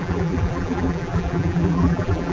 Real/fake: fake